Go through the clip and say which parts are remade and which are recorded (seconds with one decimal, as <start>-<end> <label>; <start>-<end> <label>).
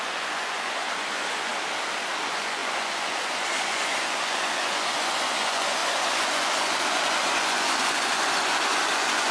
0.0-1.5 remade; 1.5-2.2 recorded; 2.2-9.3 remade